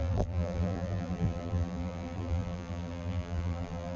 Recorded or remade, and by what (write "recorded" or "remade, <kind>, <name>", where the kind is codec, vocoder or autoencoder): remade, vocoder, BigVGAN v2